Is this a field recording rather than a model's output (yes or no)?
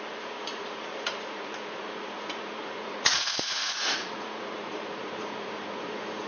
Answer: no